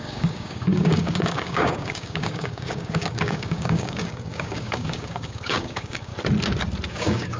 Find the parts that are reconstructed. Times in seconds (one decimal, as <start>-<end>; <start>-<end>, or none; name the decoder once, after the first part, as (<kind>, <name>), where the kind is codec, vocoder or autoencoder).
0.0-6.1 (codec, DAC); 6.9-7.4